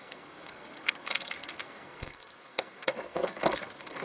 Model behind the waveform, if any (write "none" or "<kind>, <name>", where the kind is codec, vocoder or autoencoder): codec, SNAC